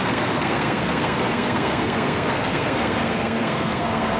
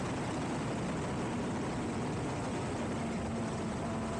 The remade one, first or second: first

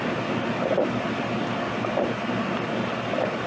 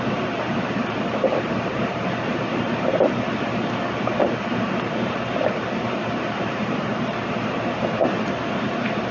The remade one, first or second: second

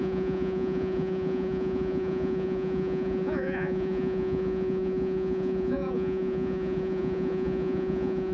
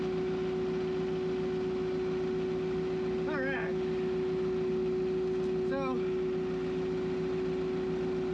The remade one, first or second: first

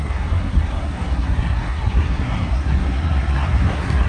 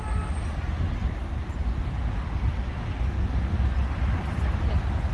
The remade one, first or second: first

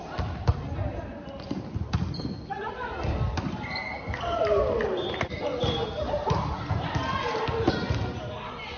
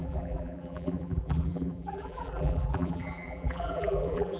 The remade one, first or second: second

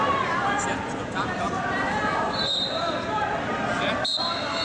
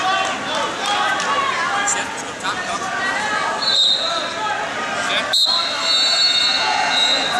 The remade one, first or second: first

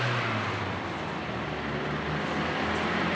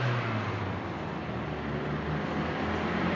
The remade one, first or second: first